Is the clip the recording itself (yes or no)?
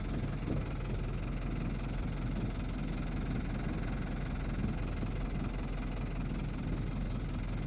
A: yes